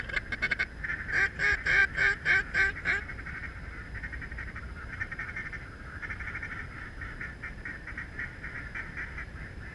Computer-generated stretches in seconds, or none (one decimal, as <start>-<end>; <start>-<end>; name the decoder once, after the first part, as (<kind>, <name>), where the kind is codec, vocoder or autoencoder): 0.0-9.7 (vocoder, BigVGAN v2)